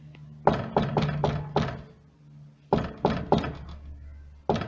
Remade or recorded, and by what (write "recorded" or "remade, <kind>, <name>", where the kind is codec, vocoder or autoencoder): recorded